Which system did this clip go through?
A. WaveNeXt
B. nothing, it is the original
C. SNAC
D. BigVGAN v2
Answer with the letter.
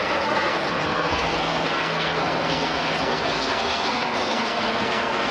C